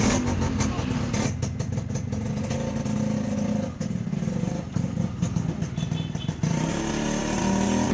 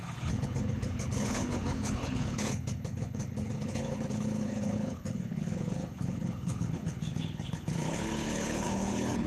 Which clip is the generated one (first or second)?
second